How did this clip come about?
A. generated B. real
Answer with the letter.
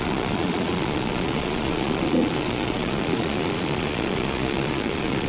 A